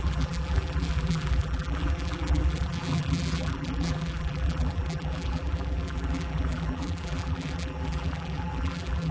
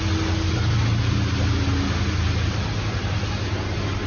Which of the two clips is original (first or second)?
second